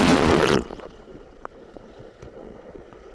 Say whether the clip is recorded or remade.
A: remade